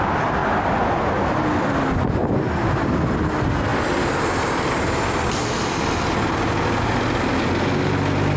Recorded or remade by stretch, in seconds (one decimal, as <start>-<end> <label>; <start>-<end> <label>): 0.0-8.4 recorded